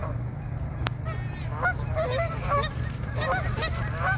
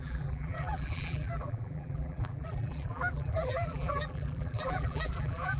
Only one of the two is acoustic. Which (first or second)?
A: first